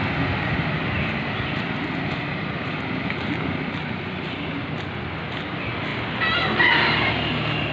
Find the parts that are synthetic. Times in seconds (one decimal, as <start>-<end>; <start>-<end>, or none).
none